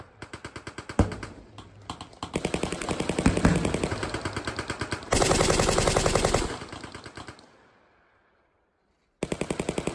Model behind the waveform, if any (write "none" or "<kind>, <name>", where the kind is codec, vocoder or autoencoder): none